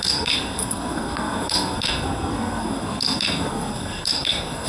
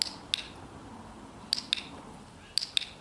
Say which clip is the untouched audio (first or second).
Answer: second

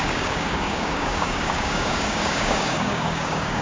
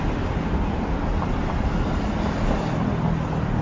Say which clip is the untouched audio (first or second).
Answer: second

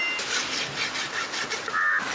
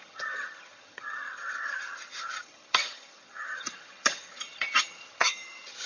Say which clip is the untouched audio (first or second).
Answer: first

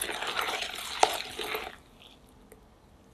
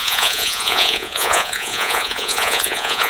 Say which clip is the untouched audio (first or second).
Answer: first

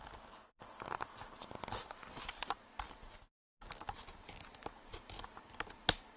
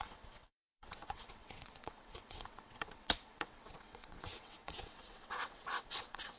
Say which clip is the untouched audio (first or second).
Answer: first